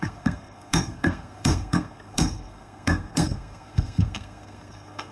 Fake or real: fake